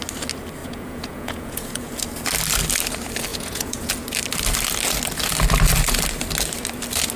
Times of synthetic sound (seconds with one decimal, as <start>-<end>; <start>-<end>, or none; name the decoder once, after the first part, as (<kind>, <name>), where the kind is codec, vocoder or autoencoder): 0.6-1.9 (vocoder, Vocos); 3.3-3.9